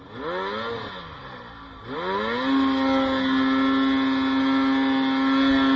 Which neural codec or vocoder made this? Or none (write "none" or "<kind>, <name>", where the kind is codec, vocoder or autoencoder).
none